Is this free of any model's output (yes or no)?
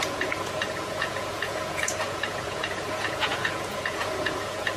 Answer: no